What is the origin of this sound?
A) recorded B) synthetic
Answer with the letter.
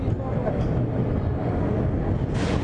A